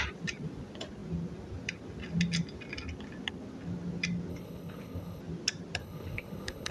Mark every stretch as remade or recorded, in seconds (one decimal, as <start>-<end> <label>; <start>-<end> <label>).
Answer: 0.0-4.3 recorded; 4.3-5.2 remade; 5.2-5.8 recorded; 5.8-6.7 remade

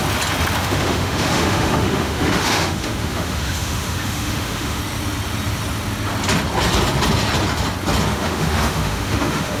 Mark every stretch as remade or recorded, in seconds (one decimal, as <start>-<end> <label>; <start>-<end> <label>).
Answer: 0.0-0.6 recorded; 0.6-4.8 remade; 4.8-8.1 recorded; 8.1-9.6 remade